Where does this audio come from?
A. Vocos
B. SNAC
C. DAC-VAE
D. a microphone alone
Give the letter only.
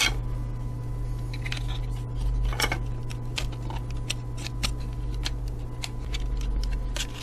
D